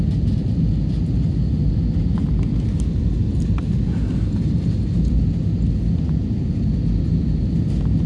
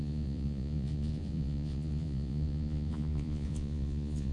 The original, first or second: first